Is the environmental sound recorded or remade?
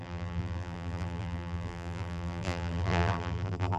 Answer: remade